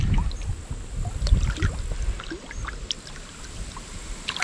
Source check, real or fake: real